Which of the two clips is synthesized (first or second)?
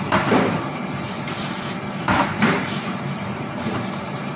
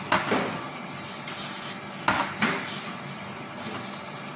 first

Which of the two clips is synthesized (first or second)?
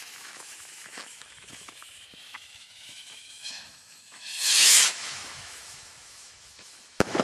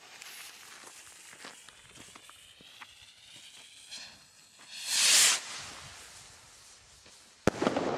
first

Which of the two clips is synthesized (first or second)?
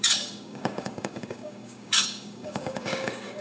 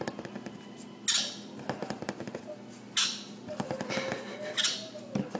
first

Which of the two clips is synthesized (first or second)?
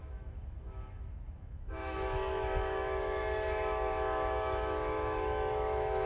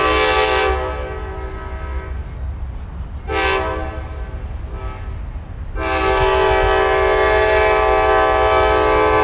first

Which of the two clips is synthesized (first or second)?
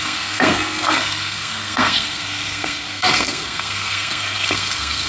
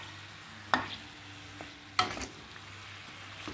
first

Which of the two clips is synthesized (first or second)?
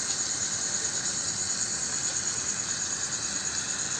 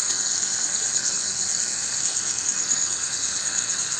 second